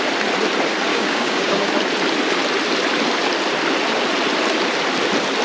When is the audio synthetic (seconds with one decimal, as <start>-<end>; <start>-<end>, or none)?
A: 0.9-1.7